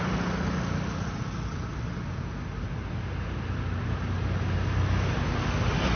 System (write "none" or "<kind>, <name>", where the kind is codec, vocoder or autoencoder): none